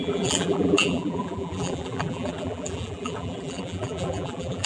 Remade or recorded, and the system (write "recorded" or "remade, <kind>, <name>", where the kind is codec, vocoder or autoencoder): remade, vocoder, BigVGAN v2